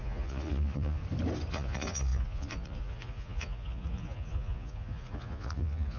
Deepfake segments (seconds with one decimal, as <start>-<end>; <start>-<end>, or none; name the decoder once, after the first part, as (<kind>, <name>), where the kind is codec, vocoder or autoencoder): 0.0-1.0 (vocoder, Vocos); 1.5-6.0